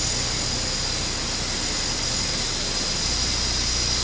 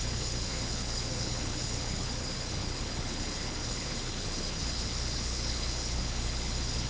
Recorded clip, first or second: first